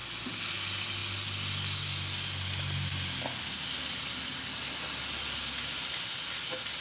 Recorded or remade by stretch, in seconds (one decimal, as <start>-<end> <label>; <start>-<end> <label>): 0.0-6.8 recorded